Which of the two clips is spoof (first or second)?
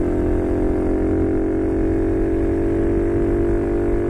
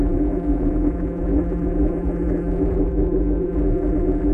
second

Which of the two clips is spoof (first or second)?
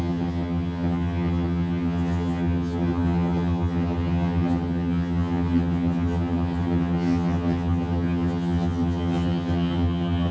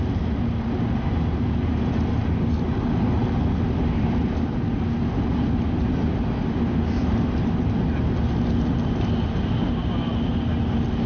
first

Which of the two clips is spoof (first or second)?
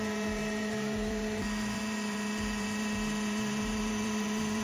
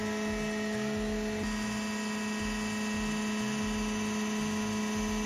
first